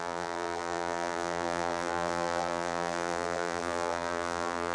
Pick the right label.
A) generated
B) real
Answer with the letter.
A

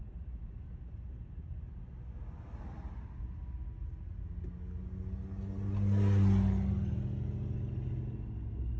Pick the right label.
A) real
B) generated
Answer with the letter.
A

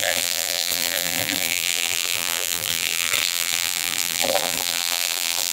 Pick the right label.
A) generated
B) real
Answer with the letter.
A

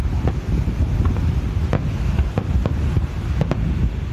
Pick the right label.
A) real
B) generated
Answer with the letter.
A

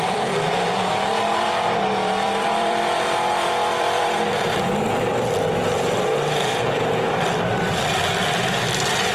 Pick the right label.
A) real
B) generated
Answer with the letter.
B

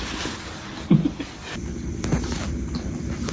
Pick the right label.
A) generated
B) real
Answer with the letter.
A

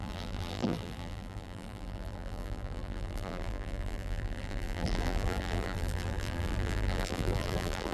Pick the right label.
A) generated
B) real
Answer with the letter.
A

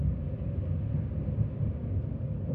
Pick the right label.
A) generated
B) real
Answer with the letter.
B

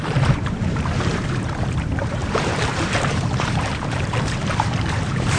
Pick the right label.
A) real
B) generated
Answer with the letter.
B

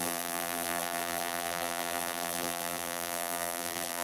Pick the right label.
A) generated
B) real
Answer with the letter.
A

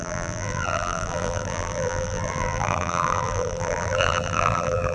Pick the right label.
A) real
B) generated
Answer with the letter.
B